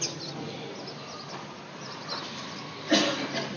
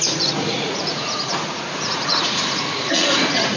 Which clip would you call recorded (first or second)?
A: first